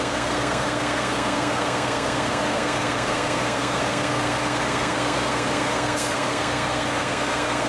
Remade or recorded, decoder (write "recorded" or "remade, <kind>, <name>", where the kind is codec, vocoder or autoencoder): remade, codec, SNAC